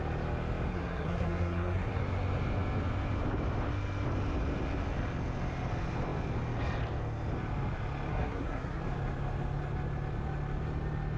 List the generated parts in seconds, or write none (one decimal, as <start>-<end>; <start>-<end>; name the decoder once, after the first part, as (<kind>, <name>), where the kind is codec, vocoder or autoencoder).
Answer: 0.7-2.0 (codec, SNAC); 8.1-8.8